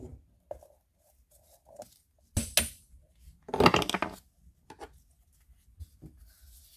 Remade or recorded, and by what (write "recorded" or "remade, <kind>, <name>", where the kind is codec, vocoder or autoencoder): recorded